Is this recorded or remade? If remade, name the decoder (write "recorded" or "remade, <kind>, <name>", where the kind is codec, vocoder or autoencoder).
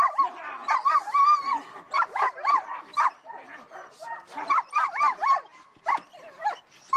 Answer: remade, vocoder, BigVGAN v2